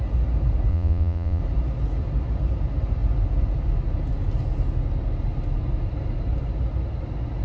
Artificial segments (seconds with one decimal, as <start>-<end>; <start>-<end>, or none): 0.7-1.4